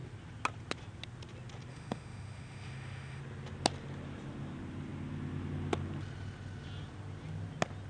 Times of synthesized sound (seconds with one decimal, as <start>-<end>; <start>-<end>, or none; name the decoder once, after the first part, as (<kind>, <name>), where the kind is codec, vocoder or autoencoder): 1.7-3.2 (autoencoder, DAC-VAE)